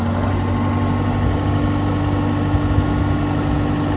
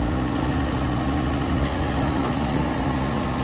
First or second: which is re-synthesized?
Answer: second